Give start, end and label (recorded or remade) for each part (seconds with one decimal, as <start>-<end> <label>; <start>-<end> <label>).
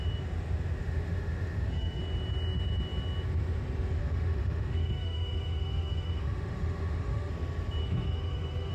0.0-0.8 recorded; 0.8-2.0 remade; 2.0-4.0 recorded; 4.0-7.3 remade; 7.3-7.8 recorded; 7.8-8.7 remade